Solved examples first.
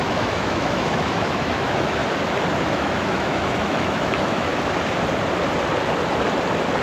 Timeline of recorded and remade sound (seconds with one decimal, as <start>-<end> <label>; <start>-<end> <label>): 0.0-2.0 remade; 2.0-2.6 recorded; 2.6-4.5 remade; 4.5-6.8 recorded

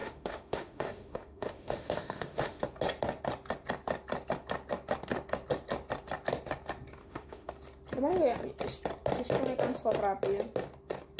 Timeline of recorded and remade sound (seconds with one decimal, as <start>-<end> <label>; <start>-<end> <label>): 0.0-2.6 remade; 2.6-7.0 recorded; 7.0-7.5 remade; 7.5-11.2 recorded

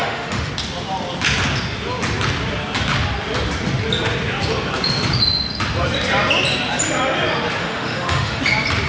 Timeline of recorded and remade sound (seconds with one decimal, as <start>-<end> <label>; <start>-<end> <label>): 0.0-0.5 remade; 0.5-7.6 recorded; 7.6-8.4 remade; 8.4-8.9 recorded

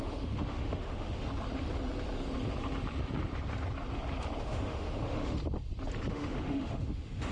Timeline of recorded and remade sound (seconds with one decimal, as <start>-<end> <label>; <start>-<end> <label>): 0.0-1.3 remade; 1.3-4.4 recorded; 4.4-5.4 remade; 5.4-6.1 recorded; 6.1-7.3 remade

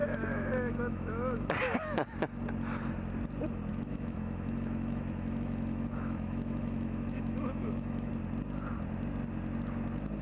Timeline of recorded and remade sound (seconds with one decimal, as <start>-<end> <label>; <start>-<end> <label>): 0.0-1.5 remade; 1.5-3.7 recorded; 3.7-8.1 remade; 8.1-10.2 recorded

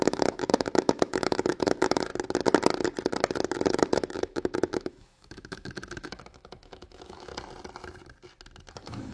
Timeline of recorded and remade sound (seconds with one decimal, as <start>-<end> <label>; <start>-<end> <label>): 0.0-2.1 remade; 2.1-3.7 recorded; 3.7-7.3 remade; 7.3-8.7 recorded; 8.7-9.1 remade

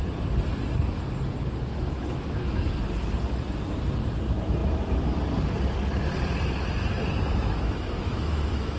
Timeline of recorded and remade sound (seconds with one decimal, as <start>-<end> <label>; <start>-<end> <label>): 0.0-1.7 recorded; 1.7-2.6 remade; 2.6-7.3 recorded; 7.3-8.8 remade

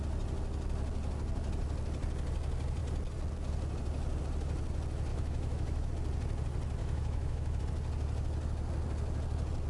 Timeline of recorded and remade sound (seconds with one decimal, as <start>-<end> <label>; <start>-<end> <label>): 0.0-5.1 recorded; 5.1-5.9 remade; 5.9-6.8 recorded; 6.8-7.6 remade; 7.6-9.7 recorded